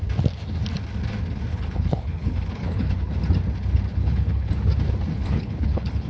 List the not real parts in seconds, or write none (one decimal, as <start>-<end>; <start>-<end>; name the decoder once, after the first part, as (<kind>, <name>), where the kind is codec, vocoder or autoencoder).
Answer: 1.5-3.1 (codec, HILCodec); 3.9-4.5; 5.1-6.1